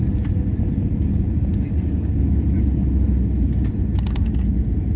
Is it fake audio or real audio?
real